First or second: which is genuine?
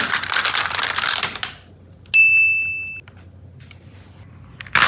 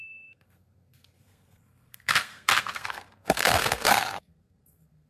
first